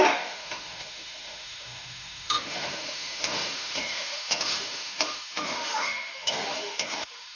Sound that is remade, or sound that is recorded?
remade